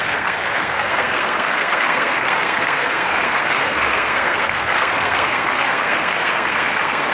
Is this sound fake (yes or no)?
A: yes